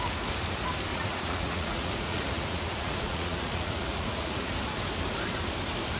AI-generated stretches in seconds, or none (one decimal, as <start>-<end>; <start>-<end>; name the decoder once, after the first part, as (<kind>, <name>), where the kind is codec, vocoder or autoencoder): 0.9-4.5 (vocoder, Vocos)